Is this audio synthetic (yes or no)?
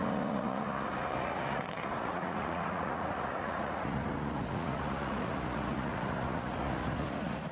yes